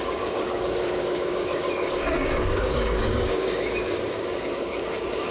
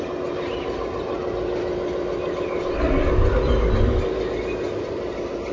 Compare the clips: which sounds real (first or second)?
second